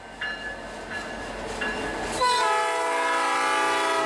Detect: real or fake real